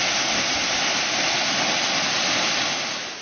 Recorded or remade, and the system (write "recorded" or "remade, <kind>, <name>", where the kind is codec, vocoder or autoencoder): recorded